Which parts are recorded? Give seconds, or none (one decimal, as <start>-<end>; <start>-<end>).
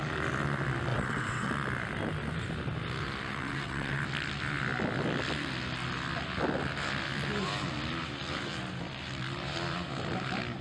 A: 0.0-0.9; 1.5-3.3; 4.0-10.6